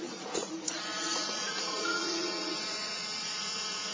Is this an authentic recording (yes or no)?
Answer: no